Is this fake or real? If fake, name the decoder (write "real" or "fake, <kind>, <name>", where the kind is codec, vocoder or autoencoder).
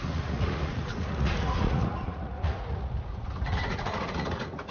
fake, vocoder, Vocos